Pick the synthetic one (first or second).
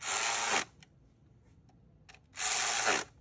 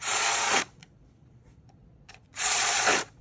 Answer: second